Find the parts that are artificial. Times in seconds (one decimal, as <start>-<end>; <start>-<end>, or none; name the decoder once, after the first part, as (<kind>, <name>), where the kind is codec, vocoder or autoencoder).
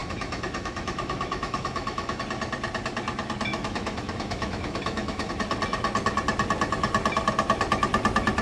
0.0-2.2 (autoencoder, DAC-VAE); 3.5-5.3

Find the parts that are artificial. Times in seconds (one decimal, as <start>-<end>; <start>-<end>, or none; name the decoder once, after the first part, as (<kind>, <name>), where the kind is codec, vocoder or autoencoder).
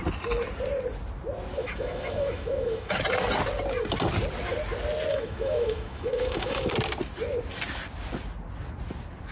1.6-3.0 (autoencoder, DAC-VAE); 5.1-6.7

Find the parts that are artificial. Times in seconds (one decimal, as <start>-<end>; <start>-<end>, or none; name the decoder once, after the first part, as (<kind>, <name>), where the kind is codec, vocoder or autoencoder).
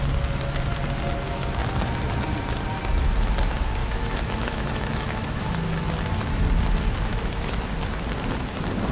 3.8-6.4 (autoencoder, DAC-VAE); 7.1-7.7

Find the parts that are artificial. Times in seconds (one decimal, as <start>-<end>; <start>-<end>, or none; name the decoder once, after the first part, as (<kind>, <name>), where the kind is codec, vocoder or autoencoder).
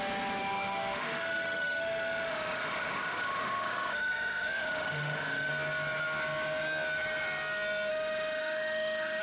0.4-5.5 (autoencoder, DAC-VAE); 7.9-9.2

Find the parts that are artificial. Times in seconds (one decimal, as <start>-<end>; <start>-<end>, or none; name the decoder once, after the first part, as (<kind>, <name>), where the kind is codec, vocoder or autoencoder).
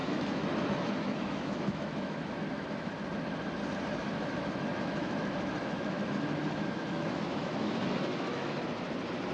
0.0-2.9 (autoencoder, DAC-VAE); 4.0-8.6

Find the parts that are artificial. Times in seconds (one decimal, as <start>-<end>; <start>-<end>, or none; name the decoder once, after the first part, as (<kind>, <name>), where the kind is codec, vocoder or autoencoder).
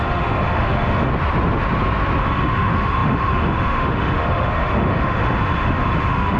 0.0-1.1 (autoencoder, DAC-VAE); 2.2-6.4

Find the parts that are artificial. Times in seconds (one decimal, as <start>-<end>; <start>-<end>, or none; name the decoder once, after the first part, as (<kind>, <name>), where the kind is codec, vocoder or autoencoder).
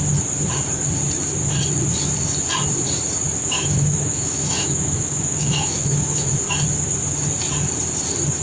3.4-6.3 (autoencoder, DAC-VAE)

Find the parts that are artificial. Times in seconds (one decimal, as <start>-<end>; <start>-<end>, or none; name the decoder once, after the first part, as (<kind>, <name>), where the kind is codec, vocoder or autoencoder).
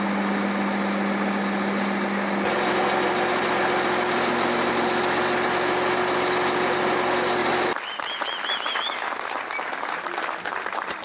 none